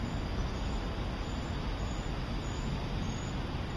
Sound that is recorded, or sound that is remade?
recorded